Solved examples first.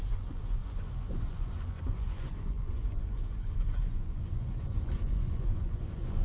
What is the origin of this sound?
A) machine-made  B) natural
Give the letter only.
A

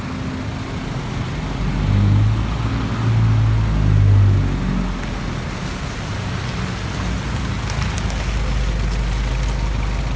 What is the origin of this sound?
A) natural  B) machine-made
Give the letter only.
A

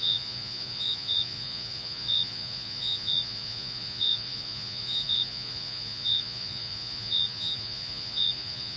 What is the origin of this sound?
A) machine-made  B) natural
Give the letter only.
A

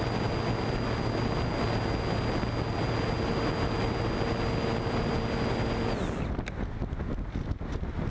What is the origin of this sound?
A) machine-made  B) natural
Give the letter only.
B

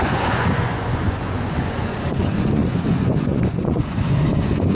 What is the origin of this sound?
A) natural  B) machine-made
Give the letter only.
B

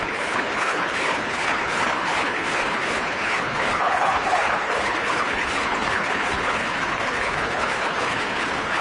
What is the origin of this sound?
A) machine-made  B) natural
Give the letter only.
A